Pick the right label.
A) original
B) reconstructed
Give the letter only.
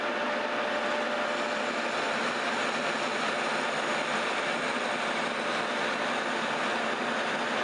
A